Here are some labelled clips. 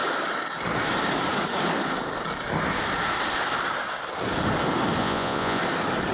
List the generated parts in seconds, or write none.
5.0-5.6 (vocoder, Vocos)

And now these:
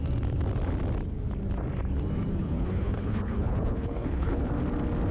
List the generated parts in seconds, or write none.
2.4-4.5 (codec, HILCodec)

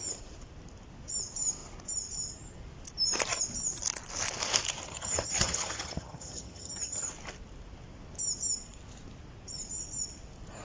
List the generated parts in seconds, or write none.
4.9-7.1 (vocoder, HiFi-GAN)

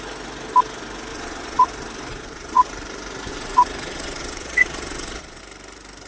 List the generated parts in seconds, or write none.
1.1-1.7 (vocoder, Vocos); 2.1-2.7; 3.3-5.4